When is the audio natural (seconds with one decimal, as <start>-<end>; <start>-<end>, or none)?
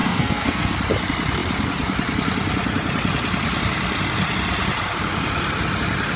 0.7-6.2